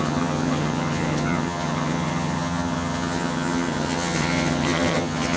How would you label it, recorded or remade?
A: remade